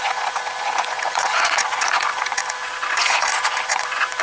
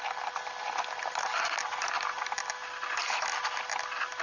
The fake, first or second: first